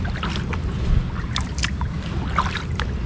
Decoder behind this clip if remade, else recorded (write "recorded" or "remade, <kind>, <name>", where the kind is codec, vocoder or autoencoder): recorded